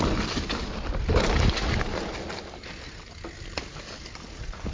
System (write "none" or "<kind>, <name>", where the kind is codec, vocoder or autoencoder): none